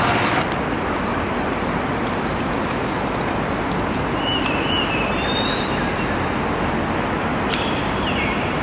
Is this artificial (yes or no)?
no